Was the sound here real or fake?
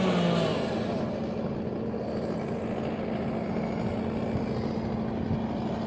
real